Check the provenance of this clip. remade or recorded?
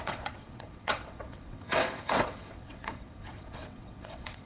remade